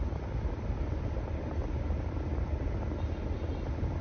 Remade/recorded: recorded